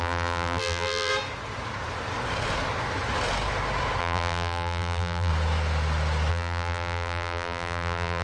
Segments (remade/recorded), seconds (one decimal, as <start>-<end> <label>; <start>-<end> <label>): 0.0-1.1 remade; 1.1-4.0 recorded; 4.0-5.3 remade; 5.3-6.3 recorded; 6.3-8.2 remade